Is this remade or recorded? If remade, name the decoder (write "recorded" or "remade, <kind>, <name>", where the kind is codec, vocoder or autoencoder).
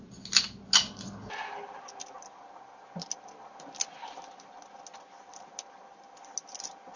recorded